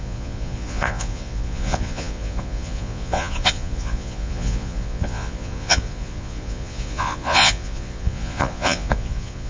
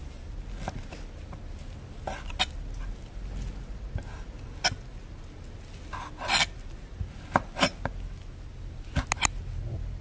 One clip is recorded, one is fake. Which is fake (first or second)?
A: first